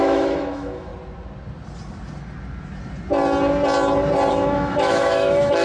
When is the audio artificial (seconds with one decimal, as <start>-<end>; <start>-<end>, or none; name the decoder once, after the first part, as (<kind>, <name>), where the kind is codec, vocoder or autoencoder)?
0.0-0.9 (autoencoder, DAC-VAE); 4.3-5.6